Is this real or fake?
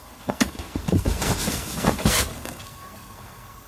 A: fake